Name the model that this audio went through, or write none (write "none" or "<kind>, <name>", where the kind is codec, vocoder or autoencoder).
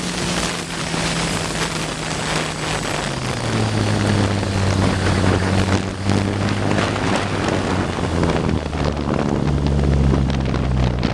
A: none